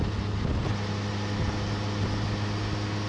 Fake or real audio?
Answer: real